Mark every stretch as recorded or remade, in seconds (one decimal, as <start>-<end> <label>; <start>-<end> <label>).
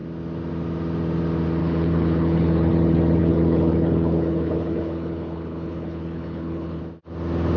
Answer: 0.0-1.6 recorded; 1.6-2.7 remade; 2.7-3.2 recorded; 3.2-6.8 remade; 6.8-7.6 recorded